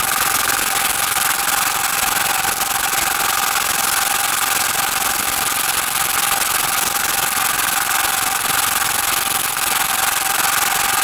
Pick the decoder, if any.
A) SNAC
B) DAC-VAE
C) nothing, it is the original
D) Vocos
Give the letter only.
C